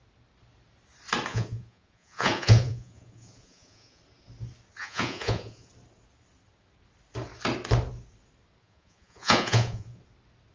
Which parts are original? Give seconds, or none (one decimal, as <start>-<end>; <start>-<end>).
0.0-1.3; 4.0-4.8; 5.7-8.6; 10.0-10.5